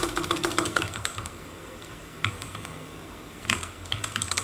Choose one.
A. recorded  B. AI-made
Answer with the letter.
B